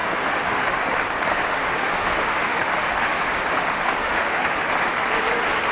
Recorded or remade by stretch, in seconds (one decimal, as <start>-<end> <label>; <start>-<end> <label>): 0.0-0.8 remade; 0.8-1.3 recorded; 1.3-4.7 remade; 4.7-5.7 recorded